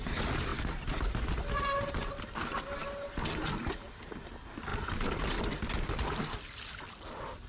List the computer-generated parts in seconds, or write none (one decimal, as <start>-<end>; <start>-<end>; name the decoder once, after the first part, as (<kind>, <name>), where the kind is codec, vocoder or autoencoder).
none